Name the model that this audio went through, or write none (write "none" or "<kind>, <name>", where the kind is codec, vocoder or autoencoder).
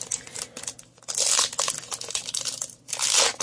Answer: none